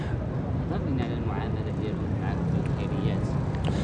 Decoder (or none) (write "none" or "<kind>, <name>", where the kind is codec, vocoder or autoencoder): none